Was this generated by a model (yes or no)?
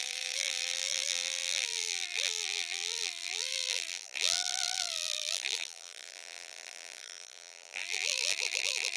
yes